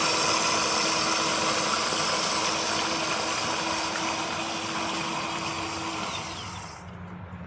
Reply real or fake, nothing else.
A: real